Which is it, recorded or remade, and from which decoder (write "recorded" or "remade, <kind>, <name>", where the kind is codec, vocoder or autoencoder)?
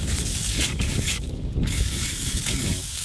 remade, codec, DAC